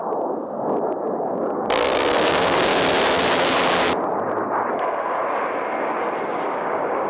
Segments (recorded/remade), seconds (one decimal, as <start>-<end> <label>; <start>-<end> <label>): 0.0-1.2 recorded; 1.2-2.7 remade; 2.7-4.7 recorded; 4.7-5.2 remade; 5.2-6.3 recorded; 6.3-7.1 remade